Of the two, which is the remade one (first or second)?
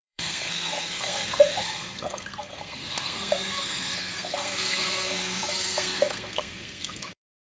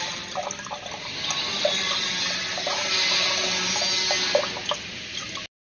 first